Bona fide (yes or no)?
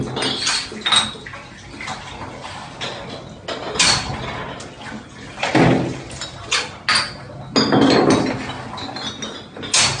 yes